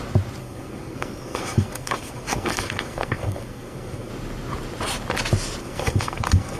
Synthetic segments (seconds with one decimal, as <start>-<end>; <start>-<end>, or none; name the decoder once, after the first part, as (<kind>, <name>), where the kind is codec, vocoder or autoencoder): 0.4-4.1 (codec, SNAC); 5.6-6.6